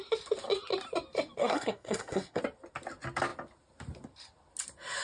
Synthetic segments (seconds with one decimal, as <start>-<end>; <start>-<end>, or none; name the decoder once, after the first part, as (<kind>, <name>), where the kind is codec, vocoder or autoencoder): 1.4-2.4 (codec, SNAC)